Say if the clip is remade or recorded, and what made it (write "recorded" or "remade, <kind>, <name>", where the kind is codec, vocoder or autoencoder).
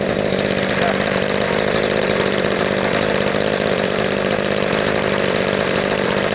remade, vocoder, BigVGAN v2